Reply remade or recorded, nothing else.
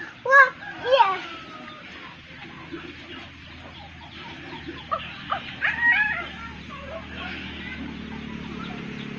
recorded